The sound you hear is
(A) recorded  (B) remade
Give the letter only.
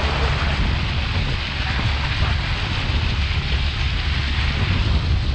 A